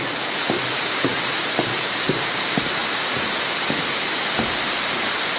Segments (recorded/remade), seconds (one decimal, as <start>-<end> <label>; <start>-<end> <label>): 0.0-1.1 recorded; 1.1-2.2 remade; 2.2-5.4 recorded

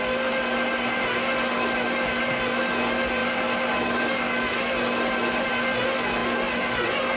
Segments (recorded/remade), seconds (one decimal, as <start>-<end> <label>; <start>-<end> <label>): 0.0-7.2 recorded

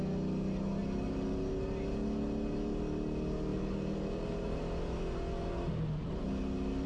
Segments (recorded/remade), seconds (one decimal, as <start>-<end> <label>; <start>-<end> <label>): 0.0-3.5 recorded; 3.5-4.8 remade; 4.8-6.9 recorded

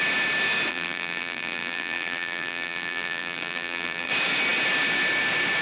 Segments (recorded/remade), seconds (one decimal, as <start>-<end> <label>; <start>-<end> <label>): 0.0-0.7 recorded; 0.7-4.1 remade; 4.1-5.6 recorded

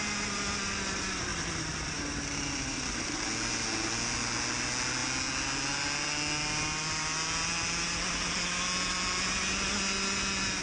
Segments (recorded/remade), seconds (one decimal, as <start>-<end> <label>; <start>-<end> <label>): 0.0-10.6 recorded

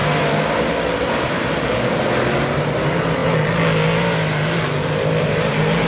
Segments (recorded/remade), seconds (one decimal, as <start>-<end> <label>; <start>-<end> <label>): 0.0-5.9 recorded

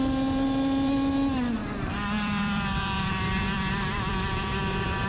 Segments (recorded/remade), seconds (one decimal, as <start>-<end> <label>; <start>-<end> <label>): 0.0-1.6 recorded; 1.6-5.1 remade